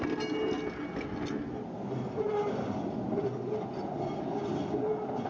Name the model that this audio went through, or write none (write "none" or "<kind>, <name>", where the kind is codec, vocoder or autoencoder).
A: none